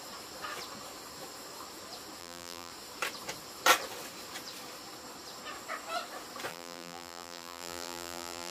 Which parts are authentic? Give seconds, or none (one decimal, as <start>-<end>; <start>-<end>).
0.0-2.2; 2.7-6.5